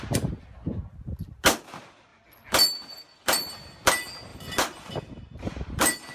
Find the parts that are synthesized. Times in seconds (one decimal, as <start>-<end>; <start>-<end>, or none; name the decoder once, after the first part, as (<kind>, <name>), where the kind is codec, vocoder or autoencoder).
2.1-3.5 (vocoder, BigVGAN v2); 4.3-6.1